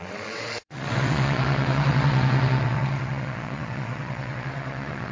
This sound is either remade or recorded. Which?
remade